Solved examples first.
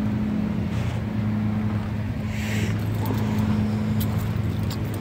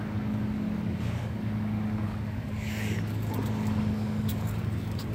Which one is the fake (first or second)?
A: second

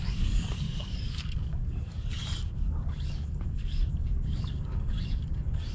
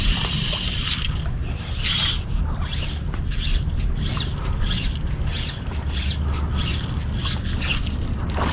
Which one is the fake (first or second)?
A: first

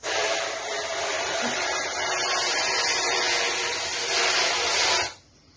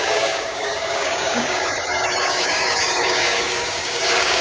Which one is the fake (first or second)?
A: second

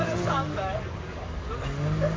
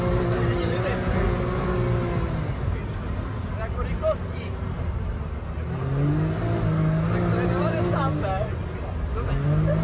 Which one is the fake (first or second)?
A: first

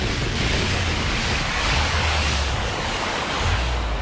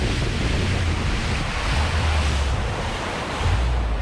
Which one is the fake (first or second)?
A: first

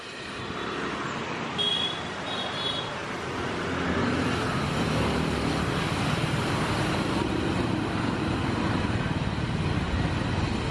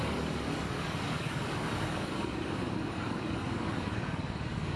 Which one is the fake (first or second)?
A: second